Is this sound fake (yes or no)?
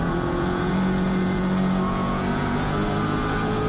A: yes